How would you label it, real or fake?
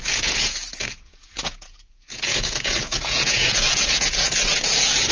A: fake